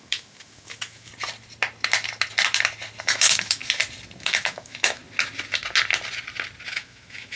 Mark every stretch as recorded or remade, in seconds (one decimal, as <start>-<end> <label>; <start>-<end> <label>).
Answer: 0.0-1.1 remade; 1.1-3.0 recorded; 3.0-3.6 remade; 3.6-4.2 recorded; 4.2-5.0 remade; 5.0-6.7 recorded; 6.7-7.4 remade